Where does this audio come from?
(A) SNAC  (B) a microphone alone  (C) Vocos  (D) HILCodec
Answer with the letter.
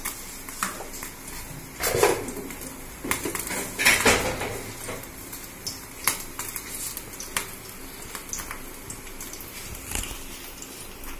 B